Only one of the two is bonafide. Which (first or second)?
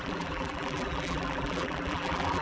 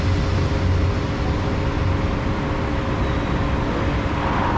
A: second